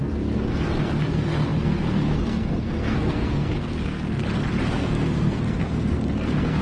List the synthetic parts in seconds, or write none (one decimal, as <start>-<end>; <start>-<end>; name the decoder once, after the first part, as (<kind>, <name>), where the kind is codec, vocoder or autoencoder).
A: 0.0-4.2 (codec, SNAC); 4.7-6.6

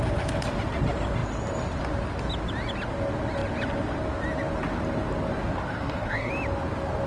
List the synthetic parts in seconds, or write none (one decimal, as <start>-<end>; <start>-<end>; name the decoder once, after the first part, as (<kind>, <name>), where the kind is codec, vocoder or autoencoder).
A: 5.7-6.3 (codec, SNAC)

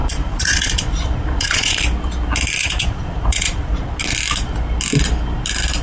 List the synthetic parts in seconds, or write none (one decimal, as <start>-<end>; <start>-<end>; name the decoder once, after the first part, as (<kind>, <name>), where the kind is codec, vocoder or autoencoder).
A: 0.0-1.8 (vocoder, Vocos); 2.6-4.0

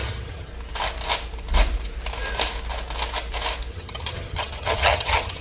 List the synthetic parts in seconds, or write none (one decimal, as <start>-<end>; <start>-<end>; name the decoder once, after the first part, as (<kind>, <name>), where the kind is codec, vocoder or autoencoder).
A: 0.0-0.5 (vocoder, HiFi-GAN); 3.7-5.4

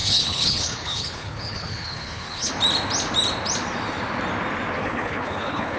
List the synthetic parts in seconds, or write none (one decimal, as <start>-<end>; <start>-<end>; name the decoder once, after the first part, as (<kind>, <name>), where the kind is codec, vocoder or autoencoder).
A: 0.0-2.5 (codec, HILCodec); 4.8-5.8